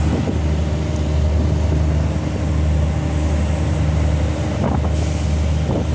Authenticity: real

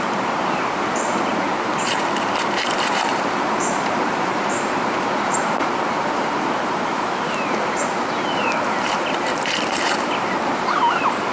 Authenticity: fake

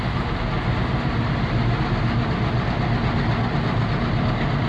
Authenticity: real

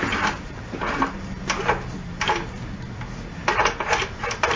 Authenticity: real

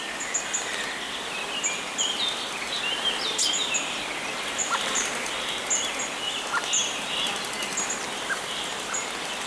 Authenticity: real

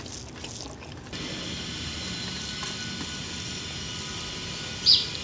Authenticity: real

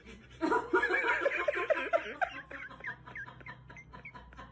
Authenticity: real